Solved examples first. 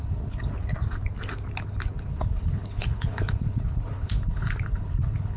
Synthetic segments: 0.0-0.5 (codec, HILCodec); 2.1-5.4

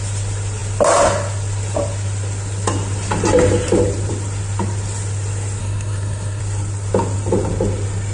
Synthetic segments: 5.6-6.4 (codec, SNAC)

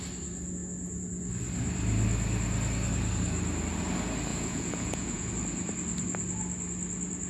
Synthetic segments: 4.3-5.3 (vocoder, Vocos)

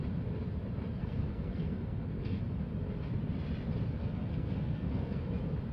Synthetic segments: 1.0-2.4 (codec, SNAC); 4.0-5.2

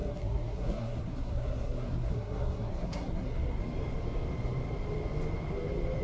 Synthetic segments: 0.0-3.6 (codec, SNAC)